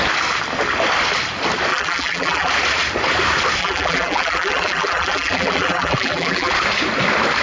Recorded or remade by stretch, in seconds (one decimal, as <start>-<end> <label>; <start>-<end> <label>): 0.0-1.7 recorded; 1.7-2.5 remade; 2.5-3.6 recorded; 3.6-6.5 remade; 6.5-7.4 recorded